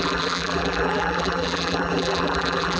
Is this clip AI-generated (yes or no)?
yes